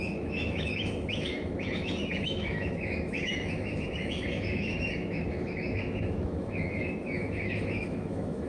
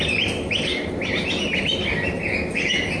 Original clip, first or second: second